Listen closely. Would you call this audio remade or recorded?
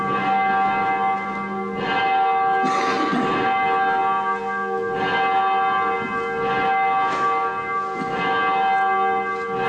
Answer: recorded